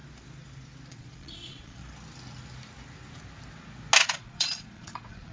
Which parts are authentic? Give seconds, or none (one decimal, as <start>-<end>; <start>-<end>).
0.0-0.9; 1.8-4.0